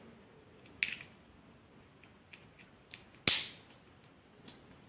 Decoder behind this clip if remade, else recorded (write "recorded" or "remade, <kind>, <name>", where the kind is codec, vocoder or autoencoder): recorded